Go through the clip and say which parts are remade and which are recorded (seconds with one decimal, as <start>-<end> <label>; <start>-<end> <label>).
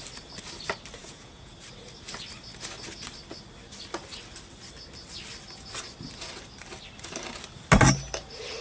0.0-1.0 recorded; 1.0-1.5 remade; 1.5-8.6 recorded